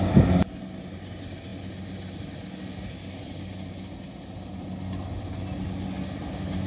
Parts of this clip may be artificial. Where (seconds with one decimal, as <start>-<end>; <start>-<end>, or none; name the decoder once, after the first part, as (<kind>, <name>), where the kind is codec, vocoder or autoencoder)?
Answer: none